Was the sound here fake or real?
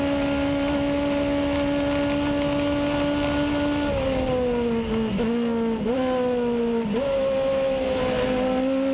real